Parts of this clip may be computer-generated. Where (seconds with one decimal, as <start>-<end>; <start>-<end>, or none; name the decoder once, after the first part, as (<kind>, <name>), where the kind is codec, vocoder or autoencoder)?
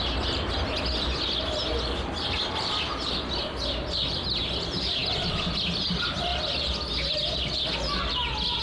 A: none